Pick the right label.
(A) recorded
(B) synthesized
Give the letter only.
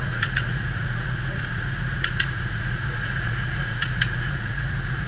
B